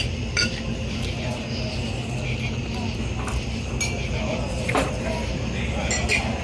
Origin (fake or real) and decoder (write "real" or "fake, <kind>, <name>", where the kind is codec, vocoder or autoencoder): real